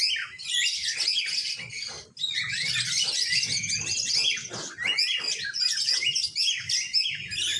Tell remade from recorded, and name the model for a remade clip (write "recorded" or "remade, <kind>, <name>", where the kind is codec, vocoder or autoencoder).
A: recorded